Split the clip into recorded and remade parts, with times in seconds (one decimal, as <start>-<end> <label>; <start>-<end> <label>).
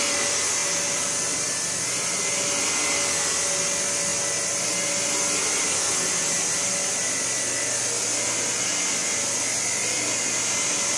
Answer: 0.0-11.0 recorded